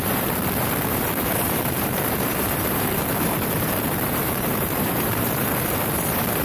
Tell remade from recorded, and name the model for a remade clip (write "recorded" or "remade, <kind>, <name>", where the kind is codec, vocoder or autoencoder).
remade, vocoder, BigVGAN v2